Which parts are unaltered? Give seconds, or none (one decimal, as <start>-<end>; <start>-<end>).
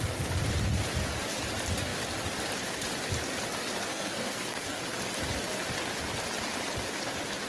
0.0-3.9; 4.8-7.5